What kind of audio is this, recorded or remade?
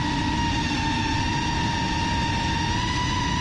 recorded